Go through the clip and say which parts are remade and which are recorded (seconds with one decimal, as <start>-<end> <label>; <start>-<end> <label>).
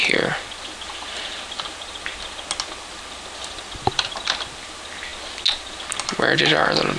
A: 0.0-7.0 recorded